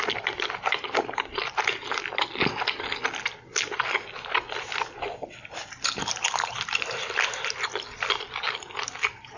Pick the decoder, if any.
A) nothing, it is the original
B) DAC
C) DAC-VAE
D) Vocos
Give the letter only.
A